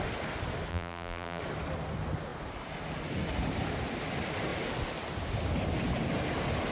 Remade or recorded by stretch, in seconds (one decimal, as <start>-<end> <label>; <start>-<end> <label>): 0.0-0.7 recorded; 0.7-1.4 remade; 1.4-6.7 recorded